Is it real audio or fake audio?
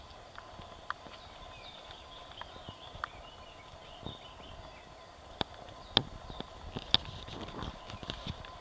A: real